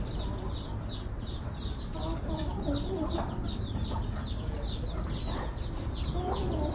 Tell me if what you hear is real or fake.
real